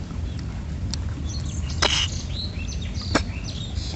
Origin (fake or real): real